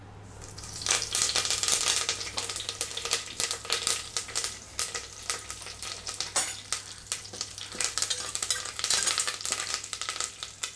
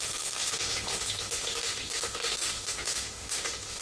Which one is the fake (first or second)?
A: second